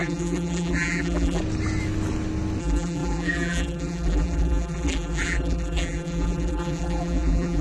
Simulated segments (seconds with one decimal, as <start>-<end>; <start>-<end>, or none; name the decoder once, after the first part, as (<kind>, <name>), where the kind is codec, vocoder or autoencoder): 0.0-1.4 (vocoder, BigVGAN v2); 2.6-7.6